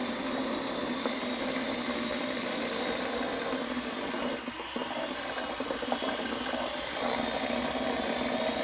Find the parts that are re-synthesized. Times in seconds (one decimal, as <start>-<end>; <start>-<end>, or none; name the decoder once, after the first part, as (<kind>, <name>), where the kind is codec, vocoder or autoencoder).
none

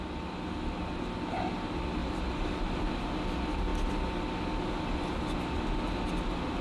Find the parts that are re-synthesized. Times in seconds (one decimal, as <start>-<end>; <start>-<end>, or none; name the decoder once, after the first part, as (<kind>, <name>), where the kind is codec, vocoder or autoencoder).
2.0-2.6 (vocoder, BigVGAN v2)

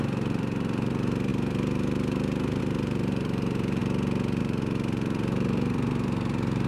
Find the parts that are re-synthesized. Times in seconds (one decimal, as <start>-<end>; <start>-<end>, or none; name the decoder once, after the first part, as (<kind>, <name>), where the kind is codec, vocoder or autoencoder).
0.0-3.8 (vocoder, BigVGAN v2); 4.4-6.7

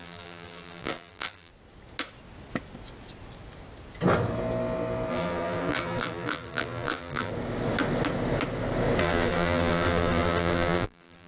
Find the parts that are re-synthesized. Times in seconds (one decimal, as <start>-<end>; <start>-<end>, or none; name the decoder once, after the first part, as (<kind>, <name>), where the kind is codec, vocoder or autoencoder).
0.0-1.5 (vocoder, BigVGAN v2); 5.1-7.3; 9.0-11.3

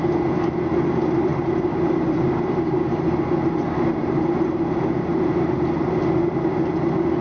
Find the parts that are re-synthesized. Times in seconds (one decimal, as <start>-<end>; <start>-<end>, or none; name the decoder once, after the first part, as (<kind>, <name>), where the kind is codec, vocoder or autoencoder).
1.3-5.6 (vocoder, BigVGAN v2)

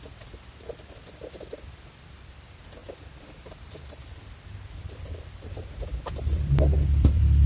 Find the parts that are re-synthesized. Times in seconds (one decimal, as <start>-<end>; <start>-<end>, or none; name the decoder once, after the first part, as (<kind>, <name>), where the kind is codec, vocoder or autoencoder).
2.8-7.5 (vocoder, BigVGAN v2)

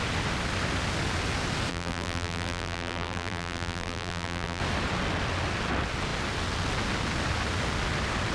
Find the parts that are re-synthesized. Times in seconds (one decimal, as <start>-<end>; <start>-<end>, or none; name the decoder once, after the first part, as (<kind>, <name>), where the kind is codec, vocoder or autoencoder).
1.7-4.6 (vocoder, BigVGAN v2)

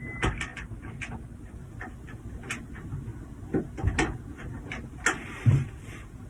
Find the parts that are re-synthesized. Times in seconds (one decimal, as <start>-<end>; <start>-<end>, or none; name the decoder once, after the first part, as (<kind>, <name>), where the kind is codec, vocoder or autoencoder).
none